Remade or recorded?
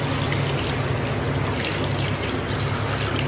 recorded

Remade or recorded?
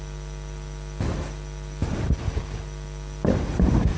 recorded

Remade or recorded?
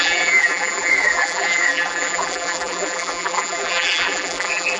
remade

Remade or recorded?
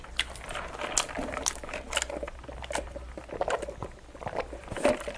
recorded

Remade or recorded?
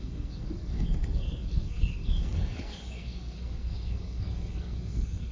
remade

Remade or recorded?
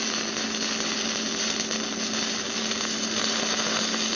recorded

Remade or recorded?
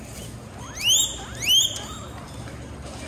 recorded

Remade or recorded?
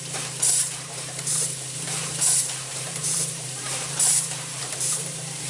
remade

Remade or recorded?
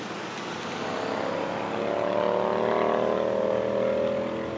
recorded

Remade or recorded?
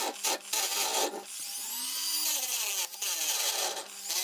recorded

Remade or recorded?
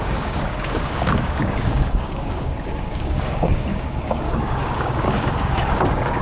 remade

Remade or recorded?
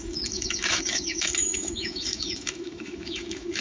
remade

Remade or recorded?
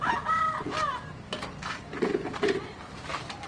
recorded